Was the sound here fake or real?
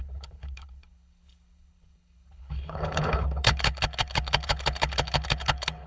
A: fake